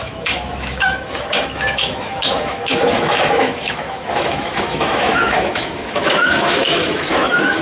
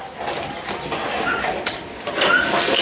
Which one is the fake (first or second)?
first